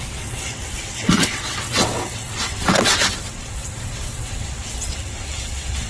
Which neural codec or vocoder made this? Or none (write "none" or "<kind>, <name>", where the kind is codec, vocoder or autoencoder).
vocoder, WaveNeXt